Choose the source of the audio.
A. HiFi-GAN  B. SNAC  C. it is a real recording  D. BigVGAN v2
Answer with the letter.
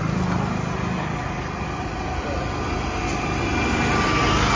C